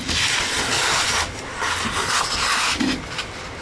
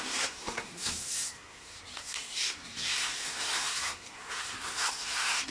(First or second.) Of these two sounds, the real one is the first